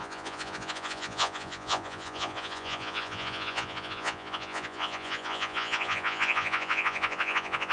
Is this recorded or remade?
remade